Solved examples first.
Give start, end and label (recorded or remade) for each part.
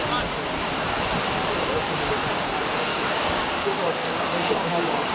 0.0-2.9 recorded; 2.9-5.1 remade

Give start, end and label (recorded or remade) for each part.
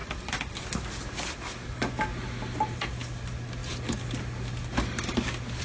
0.0-5.6 recorded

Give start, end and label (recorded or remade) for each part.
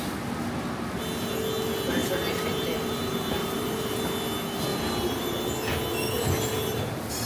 0.0-2.0 recorded; 2.0-3.9 remade; 3.9-4.7 recorded; 4.7-5.4 remade; 5.4-6.5 recorded; 6.5-7.3 remade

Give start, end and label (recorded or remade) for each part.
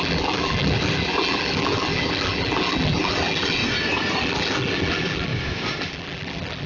0.0-3.6 remade; 3.6-4.2 recorded; 4.2-5.3 remade; 5.3-5.8 recorded; 5.8-6.7 remade